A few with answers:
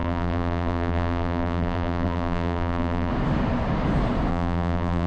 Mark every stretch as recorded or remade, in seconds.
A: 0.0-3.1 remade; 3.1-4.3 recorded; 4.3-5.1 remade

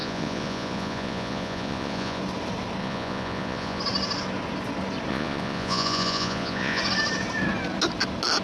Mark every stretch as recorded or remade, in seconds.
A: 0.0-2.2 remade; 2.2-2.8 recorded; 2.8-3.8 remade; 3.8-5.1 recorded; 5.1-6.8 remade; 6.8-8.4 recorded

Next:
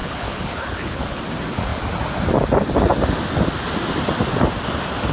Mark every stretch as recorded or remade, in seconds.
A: 0.0-1.2 remade; 1.2-5.1 recorded

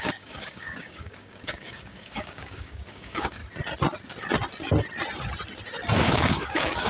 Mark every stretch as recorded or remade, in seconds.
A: 0.0-3.4 remade; 3.4-6.0 recorded; 6.0-6.9 remade